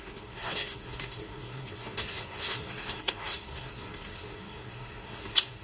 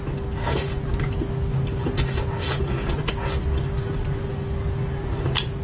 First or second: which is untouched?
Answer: second